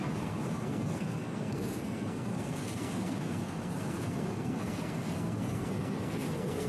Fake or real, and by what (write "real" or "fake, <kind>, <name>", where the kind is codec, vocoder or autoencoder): fake, codec, SNAC